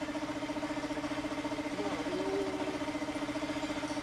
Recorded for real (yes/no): yes